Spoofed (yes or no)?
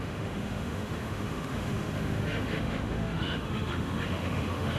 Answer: yes